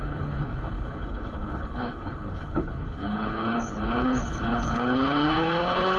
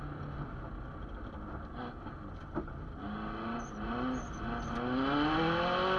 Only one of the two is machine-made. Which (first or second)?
first